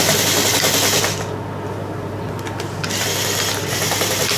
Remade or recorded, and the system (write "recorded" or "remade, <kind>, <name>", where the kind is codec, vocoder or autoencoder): recorded